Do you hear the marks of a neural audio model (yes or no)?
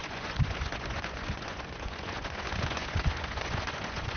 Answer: yes